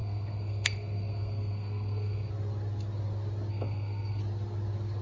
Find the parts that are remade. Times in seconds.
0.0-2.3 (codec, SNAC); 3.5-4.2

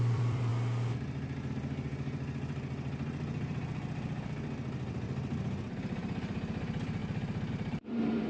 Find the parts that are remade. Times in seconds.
0.0-0.5 (vocoder, BigVGAN v2); 1.5-7.0; 7.5-8.3

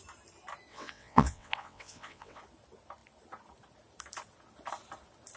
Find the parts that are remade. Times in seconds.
0.7-2.4 (vocoder, WaveNeXt)

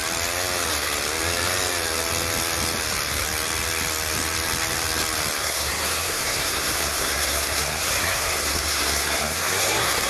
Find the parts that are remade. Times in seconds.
5.4-10.1 (codec, SNAC)

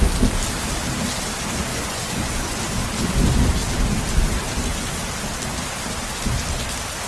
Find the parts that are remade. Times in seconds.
1.7-2.6 (vocoder, Vocos)